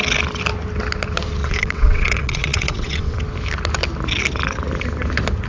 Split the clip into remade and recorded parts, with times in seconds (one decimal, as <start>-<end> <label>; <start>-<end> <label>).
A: 0.0-1.4 recorded; 1.4-3.2 remade; 3.2-5.5 recorded

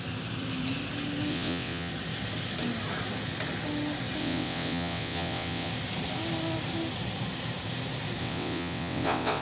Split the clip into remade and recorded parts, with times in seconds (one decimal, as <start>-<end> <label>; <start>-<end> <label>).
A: 0.0-1.3 recorded; 1.3-1.9 remade; 1.9-4.2 recorded; 4.2-5.7 remade; 5.7-8.2 recorded; 8.2-9.4 remade

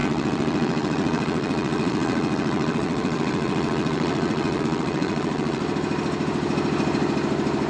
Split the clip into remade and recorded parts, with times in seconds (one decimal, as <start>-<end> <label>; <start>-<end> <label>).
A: 0.0-5.6 remade; 5.6-7.7 recorded

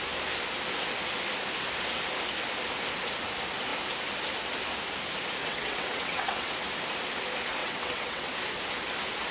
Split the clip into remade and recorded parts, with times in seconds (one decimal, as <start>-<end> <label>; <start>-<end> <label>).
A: 0.0-5.4 recorded; 5.4-6.5 remade; 6.5-7.6 recorded; 7.6-8.3 remade; 8.3-9.3 recorded

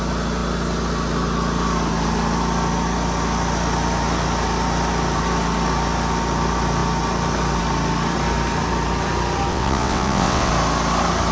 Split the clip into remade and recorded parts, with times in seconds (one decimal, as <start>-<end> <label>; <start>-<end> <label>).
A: 0.0-9.5 recorded; 9.5-10.5 remade; 10.5-11.3 recorded